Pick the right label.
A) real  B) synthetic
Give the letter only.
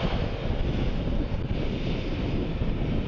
A